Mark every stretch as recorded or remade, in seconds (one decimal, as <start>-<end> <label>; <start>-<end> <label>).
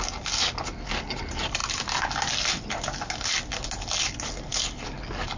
0.0-5.4 recorded